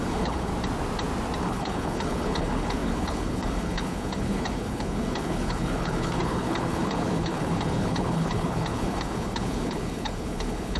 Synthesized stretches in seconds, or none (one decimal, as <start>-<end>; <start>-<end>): 0.0-0.5; 1.4-10.8